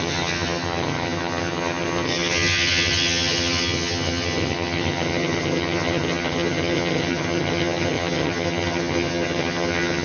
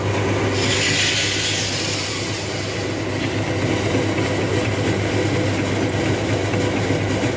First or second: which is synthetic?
first